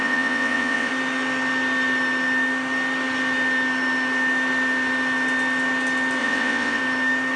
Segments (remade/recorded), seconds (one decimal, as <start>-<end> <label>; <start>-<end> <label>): 0.0-0.9 remade; 0.9-6.2 recorded; 6.2-6.8 remade; 6.8-7.4 recorded